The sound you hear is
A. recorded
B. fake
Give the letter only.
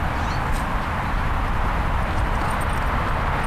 A